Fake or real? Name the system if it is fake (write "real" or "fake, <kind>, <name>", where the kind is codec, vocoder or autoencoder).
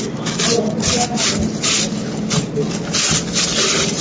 real